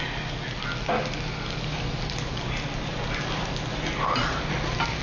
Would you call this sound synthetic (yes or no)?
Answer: no